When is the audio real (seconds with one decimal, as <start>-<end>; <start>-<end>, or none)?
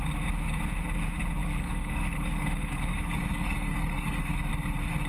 0.0-1.4; 4.5-5.1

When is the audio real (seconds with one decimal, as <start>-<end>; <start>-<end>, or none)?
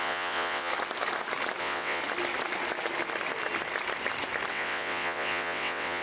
0.7-1.6; 2.0-4.5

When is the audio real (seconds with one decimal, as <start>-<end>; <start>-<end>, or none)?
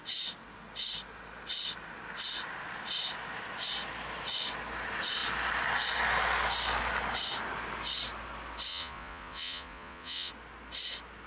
0.0-8.7; 10.3-11.3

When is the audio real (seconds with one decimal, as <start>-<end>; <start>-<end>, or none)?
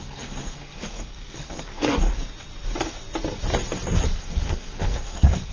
2.1-4.2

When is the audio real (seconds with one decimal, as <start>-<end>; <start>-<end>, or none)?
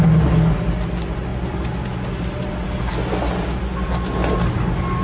0.0-5.0